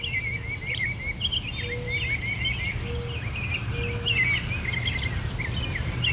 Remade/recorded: recorded